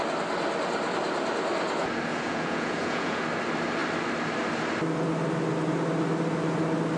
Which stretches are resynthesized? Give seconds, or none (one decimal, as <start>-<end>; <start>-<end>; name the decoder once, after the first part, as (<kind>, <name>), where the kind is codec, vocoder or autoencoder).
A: 2.1-3.2 (vocoder, Vocos)